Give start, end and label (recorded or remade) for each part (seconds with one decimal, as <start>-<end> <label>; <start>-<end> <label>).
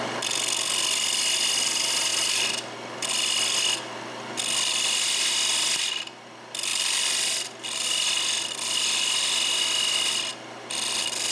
0.0-11.3 recorded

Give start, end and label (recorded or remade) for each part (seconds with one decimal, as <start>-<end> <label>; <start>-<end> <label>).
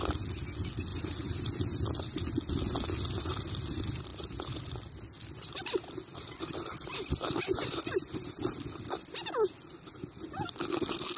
0.0-0.9 recorded; 0.9-1.5 remade; 1.5-11.2 recorded